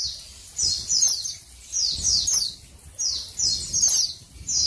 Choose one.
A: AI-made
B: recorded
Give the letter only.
B